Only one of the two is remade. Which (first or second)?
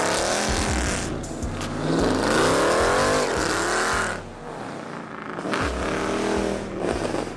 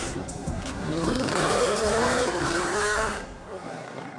second